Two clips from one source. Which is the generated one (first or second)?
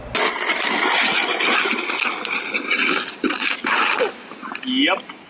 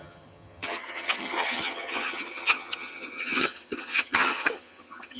second